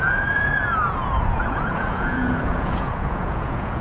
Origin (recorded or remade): remade